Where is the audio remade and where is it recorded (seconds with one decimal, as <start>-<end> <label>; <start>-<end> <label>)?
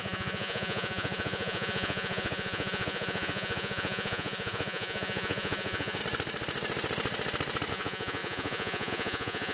0.0-6.0 remade; 6.0-7.7 recorded; 7.7-9.5 remade